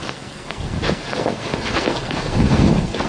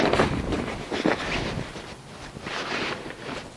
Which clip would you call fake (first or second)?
first